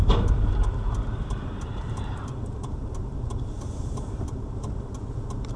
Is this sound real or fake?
fake